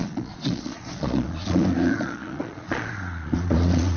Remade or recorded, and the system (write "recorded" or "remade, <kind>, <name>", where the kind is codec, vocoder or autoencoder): remade, vocoder, Vocos